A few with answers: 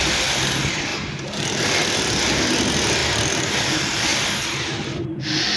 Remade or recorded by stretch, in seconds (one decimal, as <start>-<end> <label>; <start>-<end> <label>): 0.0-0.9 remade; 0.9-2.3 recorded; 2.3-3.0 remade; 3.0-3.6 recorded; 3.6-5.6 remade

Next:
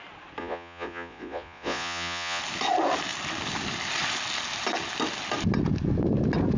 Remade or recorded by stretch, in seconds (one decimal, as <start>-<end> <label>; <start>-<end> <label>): 0.0-0.4 recorded; 0.4-2.4 remade; 2.4-6.6 recorded

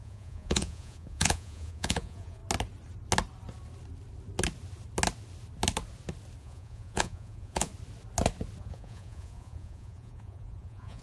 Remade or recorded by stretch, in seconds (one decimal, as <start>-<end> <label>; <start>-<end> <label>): 0.0-2.4 remade; 2.4-6.4 recorded; 6.4-7.7 remade; 7.7-8.6 recorded; 8.6-11.0 remade

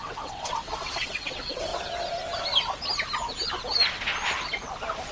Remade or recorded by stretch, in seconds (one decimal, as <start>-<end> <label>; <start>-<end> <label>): 0.0-1.7 remade; 1.7-5.1 recorded

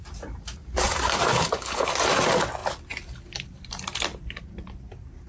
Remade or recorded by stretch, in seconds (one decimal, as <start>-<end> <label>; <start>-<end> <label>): 0.0-1.3 recorded; 1.3-1.9 remade; 1.9-5.3 recorded

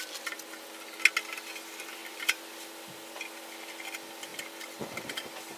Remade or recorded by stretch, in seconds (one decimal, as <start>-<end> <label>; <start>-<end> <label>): 0.0-2.0 recorded; 2.0-2.7 remade; 2.7-4.3 recorded; 4.3-5.6 remade

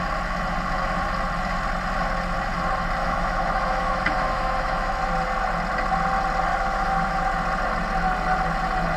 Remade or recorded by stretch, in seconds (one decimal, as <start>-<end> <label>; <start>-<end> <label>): 0.0-3.0 recorded; 3.0-5.0 remade; 5.0-6.5 recorded; 6.5-7.2 remade; 7.2-9.0 recorded

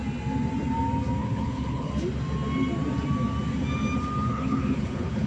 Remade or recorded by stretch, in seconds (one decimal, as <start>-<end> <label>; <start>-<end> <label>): 0.0-1.2 recorded; 1.2-1.9 remade; 1.9-4.3 recorded; 4.3-5.3 remade